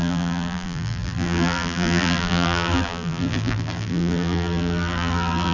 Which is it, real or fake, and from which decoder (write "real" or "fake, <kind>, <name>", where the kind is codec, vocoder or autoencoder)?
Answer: fake, vocoder, BigVGAN v2